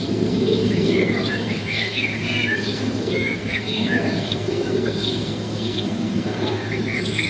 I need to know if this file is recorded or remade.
remade